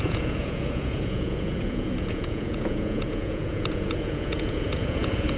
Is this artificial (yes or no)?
yes